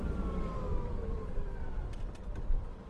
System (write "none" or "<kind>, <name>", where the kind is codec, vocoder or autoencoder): vocoder, BigVGAN v2